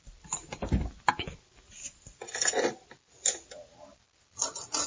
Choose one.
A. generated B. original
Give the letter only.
B